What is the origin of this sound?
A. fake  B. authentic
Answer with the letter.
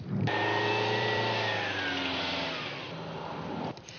A